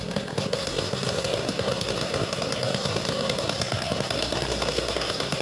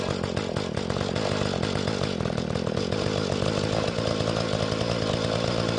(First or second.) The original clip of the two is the second